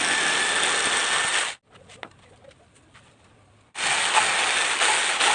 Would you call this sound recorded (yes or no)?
yes